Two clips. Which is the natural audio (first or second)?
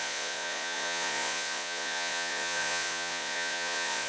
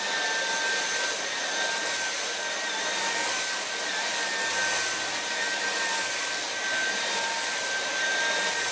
second